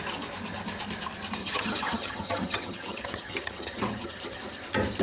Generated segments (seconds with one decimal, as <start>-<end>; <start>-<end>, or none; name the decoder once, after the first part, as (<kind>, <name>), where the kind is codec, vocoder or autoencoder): 1.4-4.4 (vocoder, HiFi-GAN)

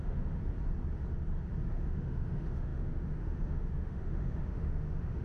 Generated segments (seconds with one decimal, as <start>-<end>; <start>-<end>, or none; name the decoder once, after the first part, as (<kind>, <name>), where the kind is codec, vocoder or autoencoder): 0.0-0.4 (autoencoder, DAC-VAE); 1.7-5.2

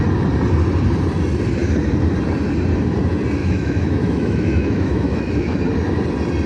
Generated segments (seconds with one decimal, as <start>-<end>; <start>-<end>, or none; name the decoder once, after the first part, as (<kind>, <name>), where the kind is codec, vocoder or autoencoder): 3.4-5.6 (autoencoder, DAC-VAE)

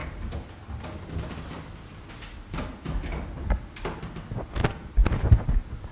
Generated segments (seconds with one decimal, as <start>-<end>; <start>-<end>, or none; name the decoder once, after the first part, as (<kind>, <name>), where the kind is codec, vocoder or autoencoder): none

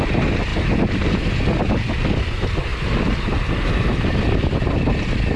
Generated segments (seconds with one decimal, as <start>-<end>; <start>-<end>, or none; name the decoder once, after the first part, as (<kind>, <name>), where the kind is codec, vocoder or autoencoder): none

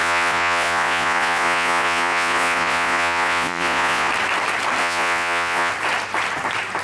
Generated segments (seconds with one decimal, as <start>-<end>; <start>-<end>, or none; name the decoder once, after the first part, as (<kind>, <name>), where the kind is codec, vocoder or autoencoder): 0.0-4.1 (vocoder, Vocos); 4.8-5.7

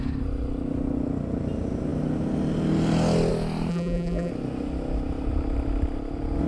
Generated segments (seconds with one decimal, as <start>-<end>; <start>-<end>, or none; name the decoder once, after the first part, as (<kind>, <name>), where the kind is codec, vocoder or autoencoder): 3.7-4.3 (vocoder, BigVGAN v2)

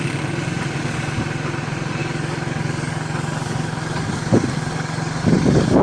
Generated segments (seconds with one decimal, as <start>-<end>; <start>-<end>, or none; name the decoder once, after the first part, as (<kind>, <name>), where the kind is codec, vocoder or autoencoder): 2.0-5.8 (codec, DAC)